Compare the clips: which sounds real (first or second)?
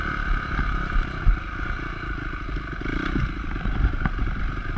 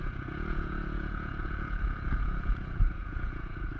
first